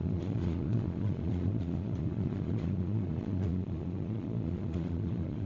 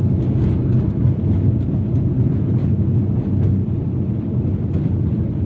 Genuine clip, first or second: second